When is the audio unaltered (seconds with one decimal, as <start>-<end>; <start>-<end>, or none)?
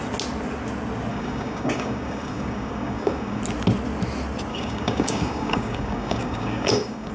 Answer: 0.0-1.1; 3.4-4.5